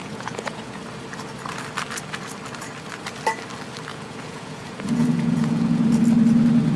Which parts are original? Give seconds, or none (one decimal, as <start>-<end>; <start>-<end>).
0.8-3.9; 6.0-6.8